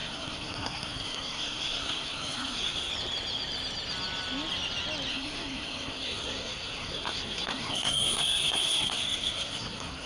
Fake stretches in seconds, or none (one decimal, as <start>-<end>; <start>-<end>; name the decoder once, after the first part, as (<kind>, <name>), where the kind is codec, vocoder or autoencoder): 0.0-2.9 (codec, SNAC); 5.1-10.1